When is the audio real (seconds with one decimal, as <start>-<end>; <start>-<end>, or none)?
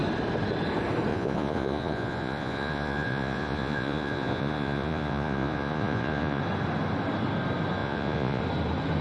0.0-1.1; 6.4-7.8; 8.4-9.0